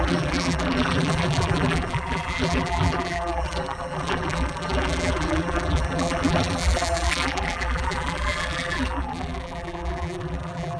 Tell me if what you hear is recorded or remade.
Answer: remade